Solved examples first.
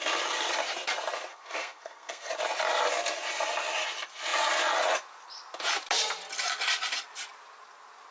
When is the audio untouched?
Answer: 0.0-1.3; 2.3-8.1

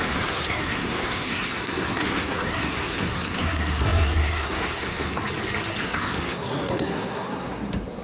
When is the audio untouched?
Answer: 5.2-5.8

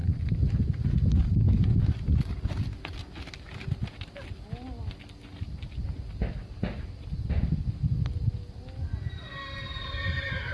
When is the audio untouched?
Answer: 0.0-10.5

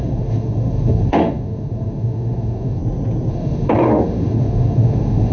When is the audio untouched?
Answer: 2.8-3.3

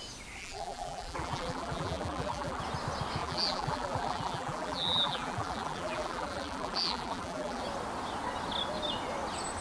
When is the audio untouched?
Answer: 0.0-0.4; 2.6-3.2; 7.6-9.6

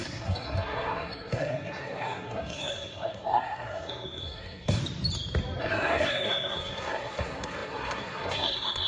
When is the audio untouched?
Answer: 4.8-5.6